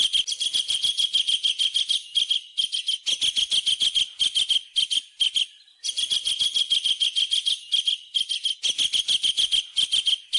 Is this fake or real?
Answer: real